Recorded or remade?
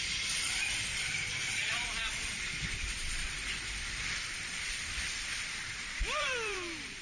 remade